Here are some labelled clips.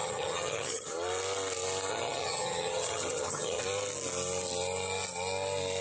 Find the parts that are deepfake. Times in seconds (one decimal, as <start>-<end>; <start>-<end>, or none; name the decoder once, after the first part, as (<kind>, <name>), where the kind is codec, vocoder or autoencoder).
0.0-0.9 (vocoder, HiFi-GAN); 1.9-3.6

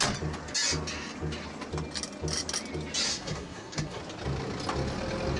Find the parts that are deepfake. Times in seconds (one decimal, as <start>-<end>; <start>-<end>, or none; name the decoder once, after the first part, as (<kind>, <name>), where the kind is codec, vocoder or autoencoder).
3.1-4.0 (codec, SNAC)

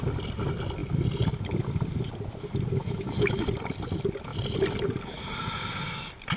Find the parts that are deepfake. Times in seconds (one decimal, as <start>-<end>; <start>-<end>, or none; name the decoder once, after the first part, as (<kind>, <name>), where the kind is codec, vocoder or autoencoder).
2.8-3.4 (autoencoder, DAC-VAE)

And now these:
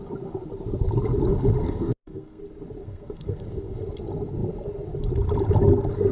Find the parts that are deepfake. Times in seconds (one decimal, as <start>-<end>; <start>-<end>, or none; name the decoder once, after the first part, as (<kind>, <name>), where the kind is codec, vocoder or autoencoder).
1.6-2.4 (codec, SNAC); 2.8-3.8

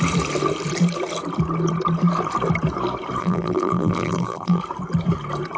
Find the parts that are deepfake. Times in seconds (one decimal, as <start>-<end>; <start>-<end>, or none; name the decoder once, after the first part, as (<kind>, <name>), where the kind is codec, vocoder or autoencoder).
3.2-4.6 (vocoder, BigVGAN v2)

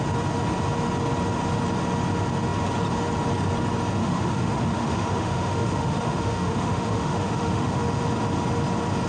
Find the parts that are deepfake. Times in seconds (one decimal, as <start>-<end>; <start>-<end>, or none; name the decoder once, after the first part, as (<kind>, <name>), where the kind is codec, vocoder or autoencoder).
4.0-7.8 (autoencoder, DAC-VAE)